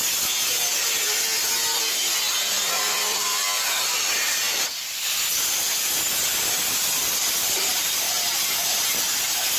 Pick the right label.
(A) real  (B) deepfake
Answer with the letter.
A